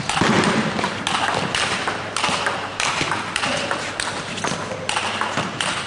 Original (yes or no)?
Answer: yes